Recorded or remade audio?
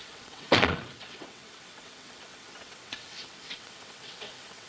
remade